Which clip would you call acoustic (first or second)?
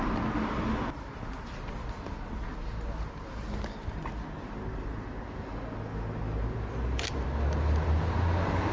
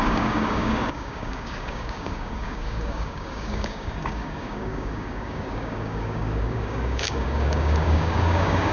first